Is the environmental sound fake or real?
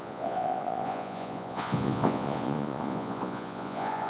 fake